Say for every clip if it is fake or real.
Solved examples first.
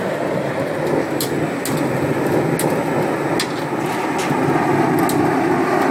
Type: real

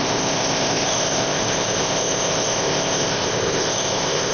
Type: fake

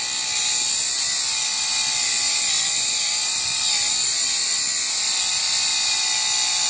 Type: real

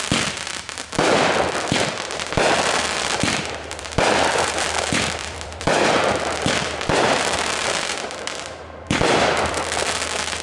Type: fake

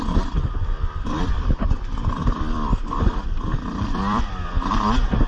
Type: fake